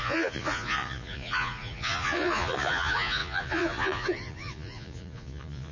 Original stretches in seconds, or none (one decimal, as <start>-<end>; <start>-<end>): none